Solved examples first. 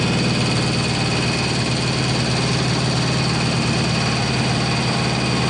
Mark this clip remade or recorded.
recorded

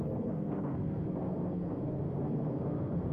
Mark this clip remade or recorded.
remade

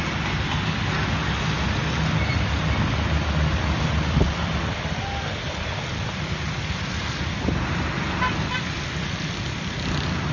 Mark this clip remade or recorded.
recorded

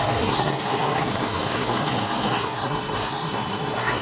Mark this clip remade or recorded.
remade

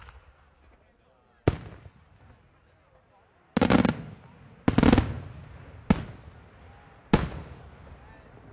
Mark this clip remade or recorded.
recorded